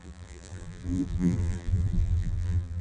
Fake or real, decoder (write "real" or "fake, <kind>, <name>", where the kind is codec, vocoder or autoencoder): fake, vocoder, BigVGAN v2